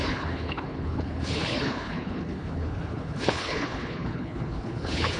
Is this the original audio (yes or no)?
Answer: no